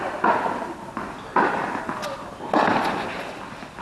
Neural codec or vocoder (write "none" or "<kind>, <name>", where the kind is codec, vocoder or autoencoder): none